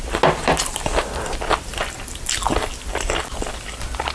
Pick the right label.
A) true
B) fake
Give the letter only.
A